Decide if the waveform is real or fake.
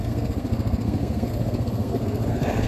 fake